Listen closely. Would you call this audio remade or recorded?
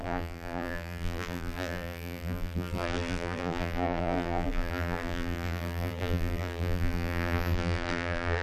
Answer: remade